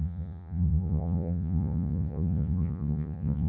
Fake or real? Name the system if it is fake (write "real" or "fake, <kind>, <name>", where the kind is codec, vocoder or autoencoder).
fake, vocoder, Vocos